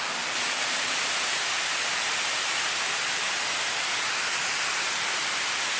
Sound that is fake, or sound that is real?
real